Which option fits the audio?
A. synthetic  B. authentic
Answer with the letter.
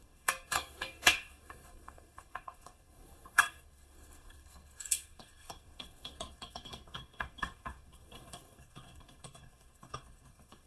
A